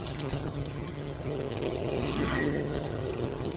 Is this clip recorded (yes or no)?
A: no